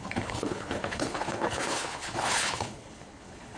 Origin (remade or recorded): remade